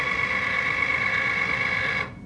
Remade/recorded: recorded